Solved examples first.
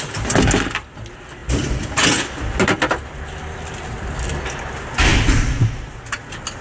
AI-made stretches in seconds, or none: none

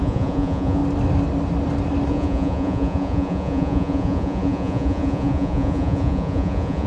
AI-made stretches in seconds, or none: 0.0-0.8 (vocoder, Vocos); 2.1-6.9

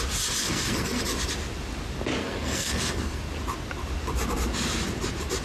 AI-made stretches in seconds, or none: 0.4-1.0 (codec, SNAC); 2.2-3.2

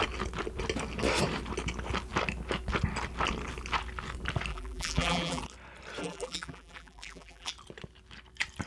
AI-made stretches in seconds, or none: 4.5-5.4 (vocoder, BigVGAN v2); 6.0-7.5

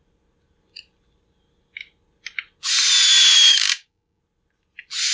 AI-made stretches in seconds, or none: 3.5-4.2 (codec, DAC)

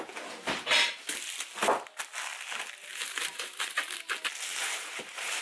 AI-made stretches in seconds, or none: 2.9-3.8 (vocoder, BigVGAN v2); 4.5-5.4

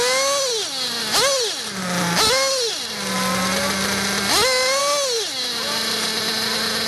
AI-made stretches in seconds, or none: none

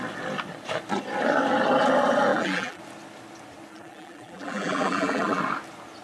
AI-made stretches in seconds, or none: 2.3-2.8 (vocoder, BigVGAN v2); 3.7-5.4